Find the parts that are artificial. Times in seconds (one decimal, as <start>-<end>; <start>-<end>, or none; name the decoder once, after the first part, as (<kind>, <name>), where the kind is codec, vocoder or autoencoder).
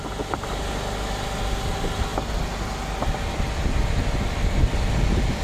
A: none